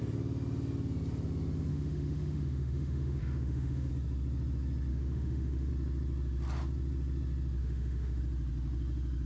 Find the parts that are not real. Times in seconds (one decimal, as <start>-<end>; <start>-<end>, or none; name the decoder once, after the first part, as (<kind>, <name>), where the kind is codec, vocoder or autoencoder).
1.7-3.9 (autoencoder, DAC-VAE); 4.9-5.7; 7.6-8.2